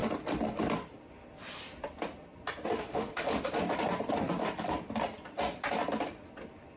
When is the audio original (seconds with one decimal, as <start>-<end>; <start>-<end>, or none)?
0.0-2.8; 3.4-6.8